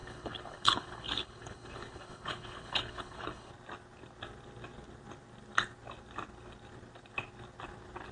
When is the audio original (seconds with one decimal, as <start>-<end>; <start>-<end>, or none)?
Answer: 3.5-8.1